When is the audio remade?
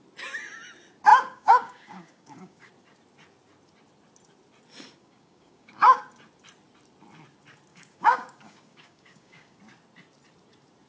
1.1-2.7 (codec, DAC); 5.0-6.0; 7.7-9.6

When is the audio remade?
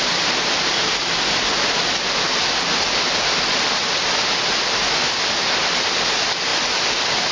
0.0-1.5 (vocoder, BigVGAN v2); 5.1-7.3